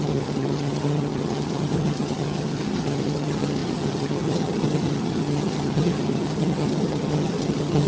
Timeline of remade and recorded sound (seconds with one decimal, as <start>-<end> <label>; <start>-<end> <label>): 0.0-7.9 remade